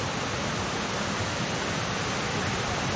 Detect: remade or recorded remade